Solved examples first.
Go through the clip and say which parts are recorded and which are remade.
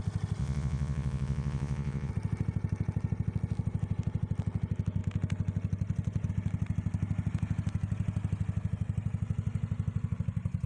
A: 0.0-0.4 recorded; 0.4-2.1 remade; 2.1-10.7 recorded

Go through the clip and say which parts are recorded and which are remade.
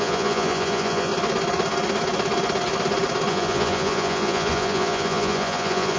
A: 0.0-1.1 remade; 1.1-3.3 recorded; 3.3-6.0 remade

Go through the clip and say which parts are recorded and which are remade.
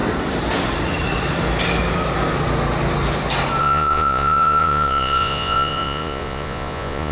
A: 0.0-3.6 recorded; 3.6-7.1 remade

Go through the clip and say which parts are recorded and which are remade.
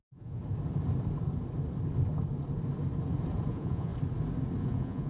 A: 0.0-0.4 remade; 0.4-3.5 recorded; 3.5-3.9 remade; 3.9-4.6 recorded; 4.6-5.1 remade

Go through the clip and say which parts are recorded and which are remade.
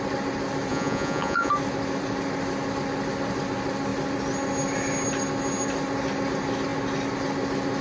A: 0.0-0.7 recorded; 0.7-1.5 remade; 1.5-7.8 recorded